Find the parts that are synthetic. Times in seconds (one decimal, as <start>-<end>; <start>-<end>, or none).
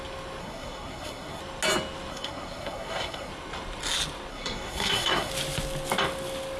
0.4-1.4; 2.1-3.3; 4.3-5.3